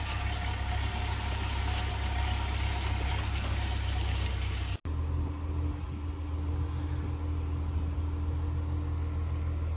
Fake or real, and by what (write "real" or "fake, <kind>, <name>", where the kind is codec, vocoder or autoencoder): real